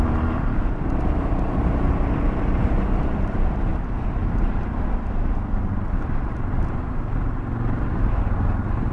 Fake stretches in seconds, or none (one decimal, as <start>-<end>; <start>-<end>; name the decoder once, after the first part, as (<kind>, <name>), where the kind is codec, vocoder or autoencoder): none